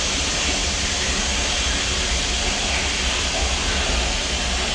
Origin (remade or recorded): recorded